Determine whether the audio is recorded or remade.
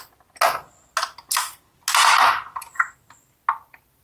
recorded